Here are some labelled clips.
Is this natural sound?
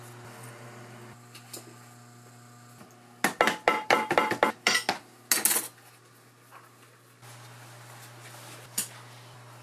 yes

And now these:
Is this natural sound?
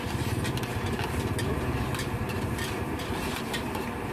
yes